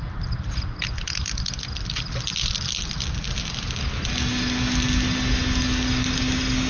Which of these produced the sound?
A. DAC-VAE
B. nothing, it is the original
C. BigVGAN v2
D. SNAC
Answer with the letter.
B